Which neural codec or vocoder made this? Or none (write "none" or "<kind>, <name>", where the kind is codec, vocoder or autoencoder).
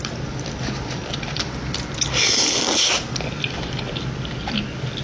none